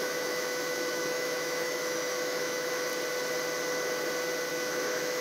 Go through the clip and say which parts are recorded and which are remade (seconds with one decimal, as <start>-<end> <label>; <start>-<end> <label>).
0.0-2.9 remade; 2.9-4.5 recorded; 4.5-5.2 remade